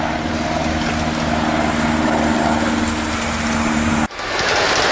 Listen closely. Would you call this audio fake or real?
real